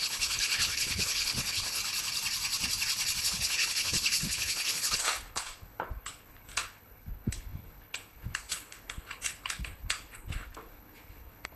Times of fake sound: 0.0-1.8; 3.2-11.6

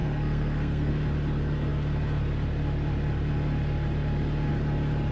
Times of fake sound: 0.0-0.9

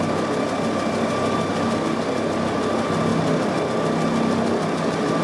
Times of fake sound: 3.1-3.6

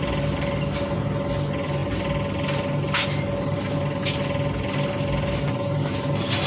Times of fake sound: 0.0-6.5

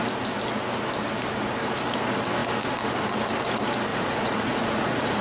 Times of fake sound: 3.9-5.2

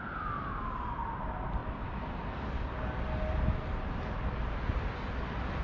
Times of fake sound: none

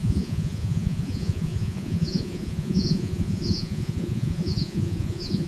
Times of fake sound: 0.0-5.5

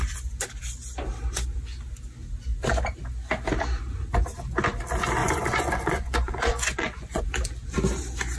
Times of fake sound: 5.2-7.2